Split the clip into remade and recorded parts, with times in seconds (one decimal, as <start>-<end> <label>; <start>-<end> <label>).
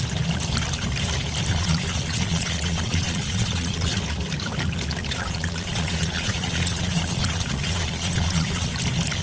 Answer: 0.0-1.5 recorded; 1.5-4.0 remade; 4.0-5.0 recorded; 5.0-8.7 remade; 8.7-9.2 recorded